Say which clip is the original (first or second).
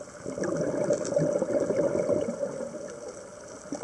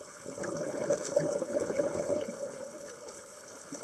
first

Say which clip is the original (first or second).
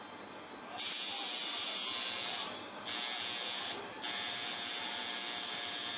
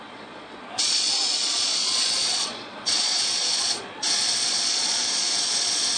first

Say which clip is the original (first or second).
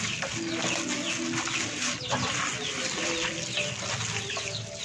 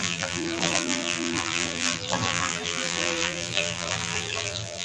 first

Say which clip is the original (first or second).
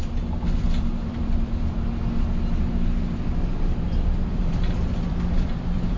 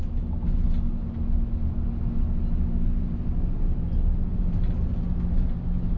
second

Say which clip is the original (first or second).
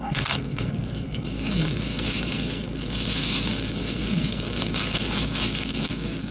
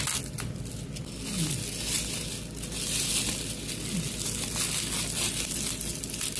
second